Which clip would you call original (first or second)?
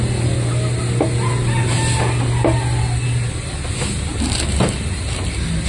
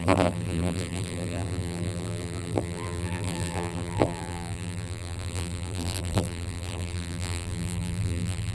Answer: first